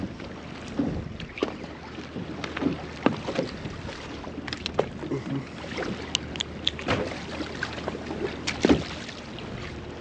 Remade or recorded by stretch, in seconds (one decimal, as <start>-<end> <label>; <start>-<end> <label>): 0.0-10.0 recorded